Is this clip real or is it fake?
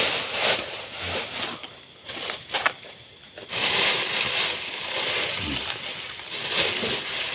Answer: real